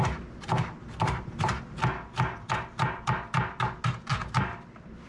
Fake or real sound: real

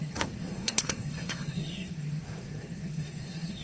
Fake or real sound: fake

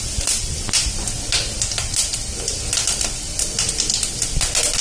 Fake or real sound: real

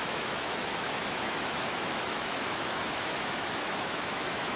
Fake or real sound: fake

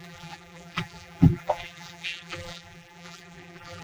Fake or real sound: fake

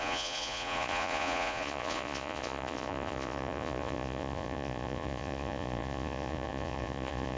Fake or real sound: fake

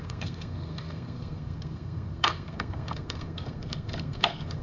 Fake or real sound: fake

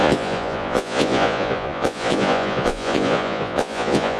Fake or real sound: fake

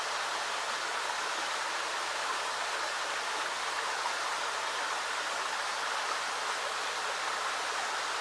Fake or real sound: real